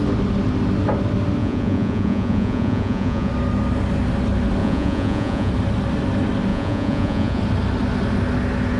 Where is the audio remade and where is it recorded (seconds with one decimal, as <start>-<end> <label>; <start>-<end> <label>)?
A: 0.0-1.4 recorded; 1.4-3.3 remade; 3.3-4.6 recorded; 4.6-5.5 remade; 5.5-6.5 recorded; 6.5-7.4 remade; 7.4-8.8 recorded